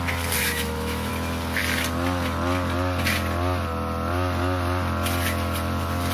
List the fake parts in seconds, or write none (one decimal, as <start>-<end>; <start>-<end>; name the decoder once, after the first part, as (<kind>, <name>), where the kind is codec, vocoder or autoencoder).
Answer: 0.4-1.1 (autoencoder, DAC-VAE)